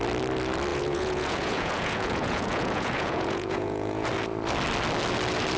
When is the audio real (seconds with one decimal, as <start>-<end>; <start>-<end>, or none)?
0.0-0.7; 4.1-5.6

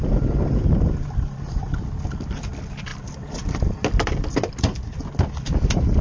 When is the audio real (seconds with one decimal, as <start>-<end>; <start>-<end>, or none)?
0.0-6.0